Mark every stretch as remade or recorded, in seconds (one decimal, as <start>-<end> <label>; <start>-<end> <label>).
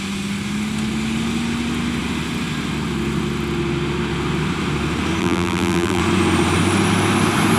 0.0-5.2 recorded; 5.2-6.0 remade; 6.0-7.6 recorded